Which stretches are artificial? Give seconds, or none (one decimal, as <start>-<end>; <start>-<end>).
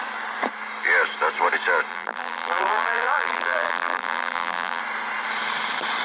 1.9-4.8